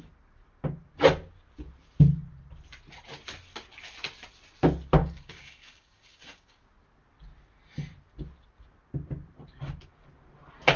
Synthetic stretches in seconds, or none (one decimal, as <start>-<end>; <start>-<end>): 5.0-6.6